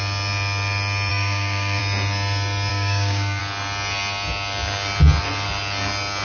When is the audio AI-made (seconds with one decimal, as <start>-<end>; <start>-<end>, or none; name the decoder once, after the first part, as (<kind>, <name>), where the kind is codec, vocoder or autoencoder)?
1.1-1.8 (codec, DAC); 2.7-3.4